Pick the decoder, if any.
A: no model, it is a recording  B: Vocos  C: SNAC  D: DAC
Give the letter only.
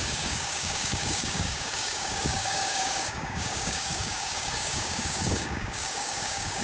D